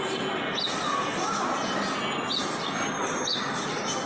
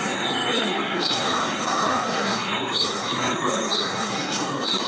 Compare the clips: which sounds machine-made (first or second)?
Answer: second